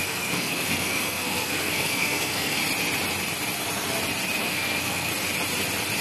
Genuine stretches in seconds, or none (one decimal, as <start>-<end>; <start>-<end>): 2.6-4.4; 5.1-6.0